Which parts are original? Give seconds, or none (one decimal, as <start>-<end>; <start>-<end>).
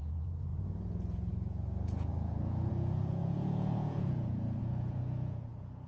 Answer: none